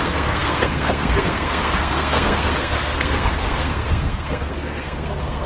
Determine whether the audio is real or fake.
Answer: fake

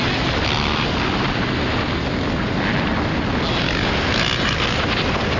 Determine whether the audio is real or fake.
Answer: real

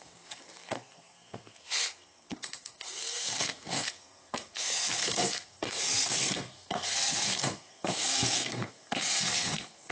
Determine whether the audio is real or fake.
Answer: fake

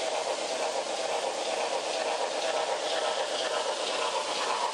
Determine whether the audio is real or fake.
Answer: real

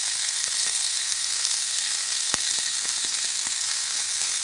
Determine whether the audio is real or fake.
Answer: fake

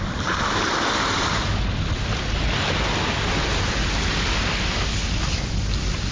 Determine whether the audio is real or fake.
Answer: real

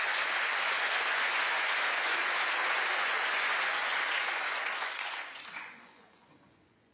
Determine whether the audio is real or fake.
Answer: fake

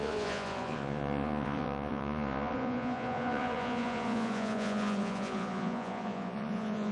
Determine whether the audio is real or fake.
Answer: fake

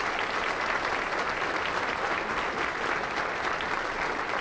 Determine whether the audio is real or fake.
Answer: real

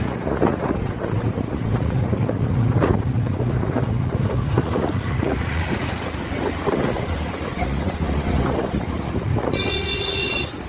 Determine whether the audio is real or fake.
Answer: fake